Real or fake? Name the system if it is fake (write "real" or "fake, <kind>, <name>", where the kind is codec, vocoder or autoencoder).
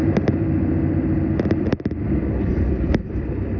fake, vocoder, BigVGAN v2